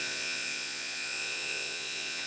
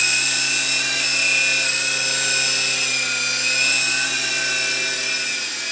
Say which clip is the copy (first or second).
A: first